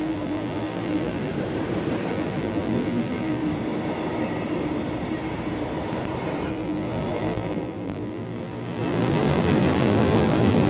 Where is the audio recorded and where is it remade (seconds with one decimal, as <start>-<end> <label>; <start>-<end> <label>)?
0.0-1.3 remade; 1.3-2.1 recorded; 2.1-3.4 remade; 3.4-6.5 recorded; 6.5-10.7 remade

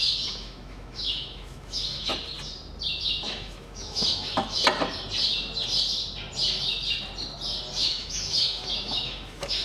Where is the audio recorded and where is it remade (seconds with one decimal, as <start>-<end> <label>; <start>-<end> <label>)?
0.0-2.1 remade; 2.1-3.0 recorded; 3.0-4.6 remade; 4.6-7.8 recorded; 7.8-9.6 remade

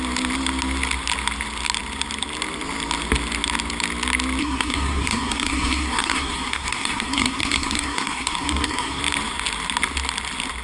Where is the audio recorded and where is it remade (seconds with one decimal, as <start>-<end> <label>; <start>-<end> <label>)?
0.0-4.4 recorded; 4.4-9.0 remade; 9.0-10.6 recorded

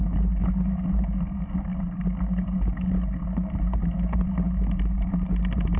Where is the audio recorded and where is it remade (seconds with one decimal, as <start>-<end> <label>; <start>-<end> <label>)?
0.0-5.8 recorded

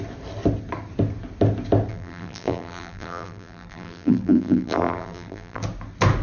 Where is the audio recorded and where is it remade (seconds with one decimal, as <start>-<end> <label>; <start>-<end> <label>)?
0.0-1.9 recorded; 1.9-5.6 remade; 5.6-6.2 recorded

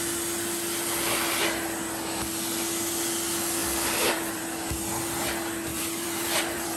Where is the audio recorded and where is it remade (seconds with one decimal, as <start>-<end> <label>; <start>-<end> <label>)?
0.0-3.6 recorded; 3.6-4.4 remade; 4.4-5.7 recorded; 5.7-6.8 remade